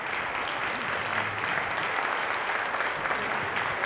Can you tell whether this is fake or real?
real